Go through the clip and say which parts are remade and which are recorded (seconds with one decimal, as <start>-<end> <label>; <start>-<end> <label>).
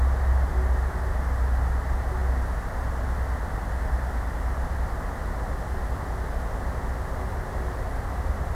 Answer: 0.0-8.5 recorded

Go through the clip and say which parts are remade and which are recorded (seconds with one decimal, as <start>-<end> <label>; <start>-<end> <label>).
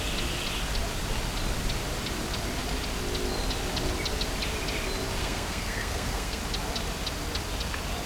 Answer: 0.0-5.2 recorded; 5.2-6.4 remade; 6.4-8.1 recorded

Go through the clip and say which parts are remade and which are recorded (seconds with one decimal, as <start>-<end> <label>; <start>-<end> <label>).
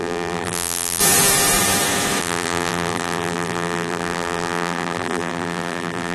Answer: 0.0-1.0 remade; 1.0-2.2 recorded; 2.2-6.1 remade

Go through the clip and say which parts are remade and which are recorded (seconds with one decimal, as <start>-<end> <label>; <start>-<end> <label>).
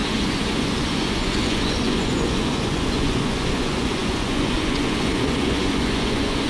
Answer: 0.0-6.5 remade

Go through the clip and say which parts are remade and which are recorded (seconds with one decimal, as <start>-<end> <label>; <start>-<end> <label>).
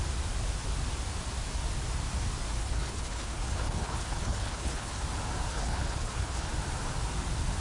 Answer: 0.0-2.6 recorded; 2.6-5.0 remade; 5.0-5.5 recorded; 5.5-6.5 remade; 6.5-7.6 recorded